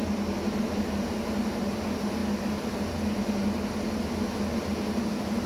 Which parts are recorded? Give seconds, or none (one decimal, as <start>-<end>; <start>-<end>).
0.0-5.5